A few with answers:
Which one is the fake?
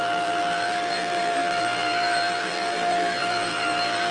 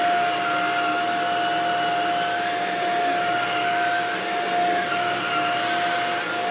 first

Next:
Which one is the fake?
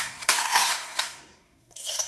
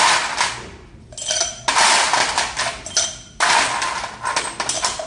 first